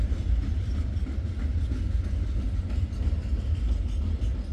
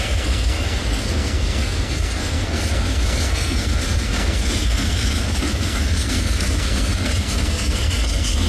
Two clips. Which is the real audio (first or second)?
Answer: first